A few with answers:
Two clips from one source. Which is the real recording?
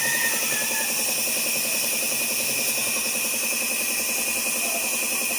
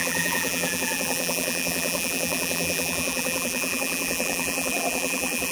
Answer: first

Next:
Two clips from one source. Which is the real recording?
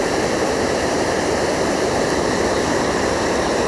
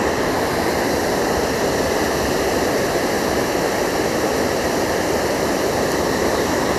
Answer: second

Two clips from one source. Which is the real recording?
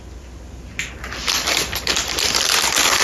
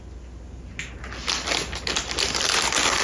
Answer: second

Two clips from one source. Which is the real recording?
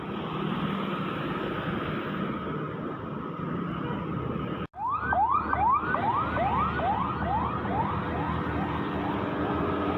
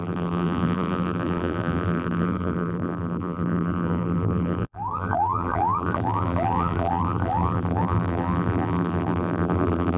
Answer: first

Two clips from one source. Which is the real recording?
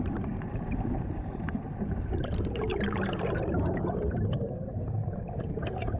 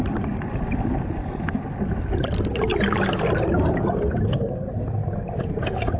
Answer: second